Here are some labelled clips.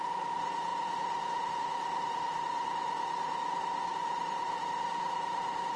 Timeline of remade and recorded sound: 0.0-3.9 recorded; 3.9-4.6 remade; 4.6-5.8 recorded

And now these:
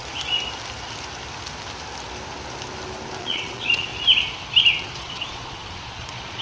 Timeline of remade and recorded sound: 0.0-3.2 recorded; 3.2-3.9 remade; 3.9-4.8 recorded; 4.8-6.4 remade

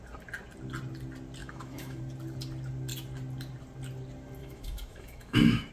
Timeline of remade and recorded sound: 0.0-1.4 recorded; 1.4-2.0 remade; 2.0-4.4 recorded; 4.4-5.7 remade

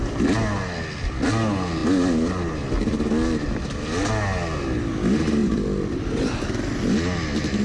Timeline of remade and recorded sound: 0.0-5.4 recorded; 5.4-6.4 remade; 6.4-7.6 recorded

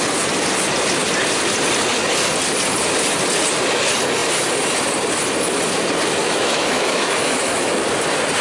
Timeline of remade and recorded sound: 0.0-6.2 recorded; 6.2-7.7 remade; 7.7-8.4 recorded

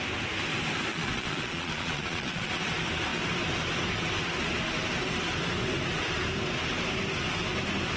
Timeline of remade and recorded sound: 0.0-0.9 recorded; 0.9-2.6 remade; 2.6-8.0 recorded